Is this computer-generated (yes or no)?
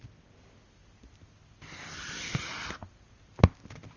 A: no